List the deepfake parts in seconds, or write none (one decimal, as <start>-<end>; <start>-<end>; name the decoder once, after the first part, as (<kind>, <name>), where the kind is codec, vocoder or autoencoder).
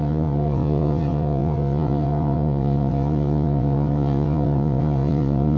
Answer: 0.0-5.6 (vocoder, WaveNeXt)